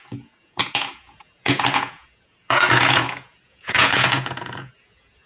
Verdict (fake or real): fake